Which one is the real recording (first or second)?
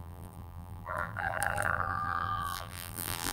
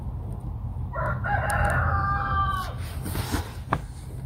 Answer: second